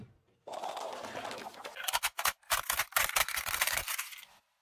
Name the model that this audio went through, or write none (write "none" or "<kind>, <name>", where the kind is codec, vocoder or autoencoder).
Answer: none